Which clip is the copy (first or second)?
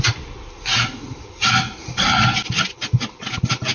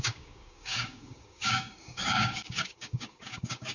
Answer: second